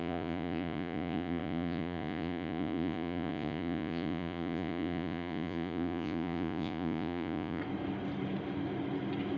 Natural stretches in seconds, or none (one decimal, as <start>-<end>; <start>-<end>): 7.6-9.4